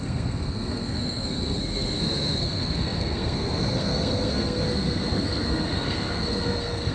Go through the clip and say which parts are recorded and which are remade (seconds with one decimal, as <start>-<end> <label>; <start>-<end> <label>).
0.0-6.9 remade